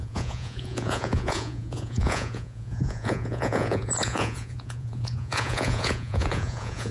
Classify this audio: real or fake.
fake